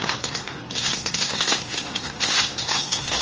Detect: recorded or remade remade